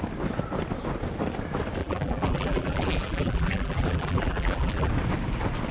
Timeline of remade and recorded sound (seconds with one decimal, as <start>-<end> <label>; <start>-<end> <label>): 0.0-1.8 recorded; 1.8-4.9 remade; 4.9-5.7 recorded